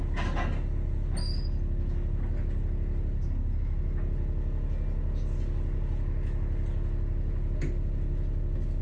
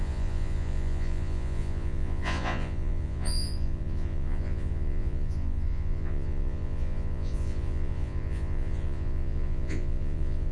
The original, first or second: first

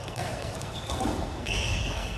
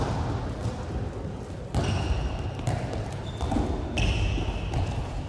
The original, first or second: second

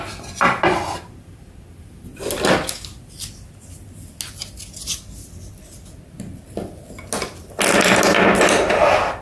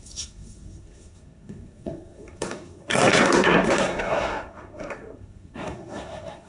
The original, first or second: first